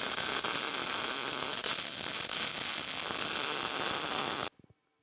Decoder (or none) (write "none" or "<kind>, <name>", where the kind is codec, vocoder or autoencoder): none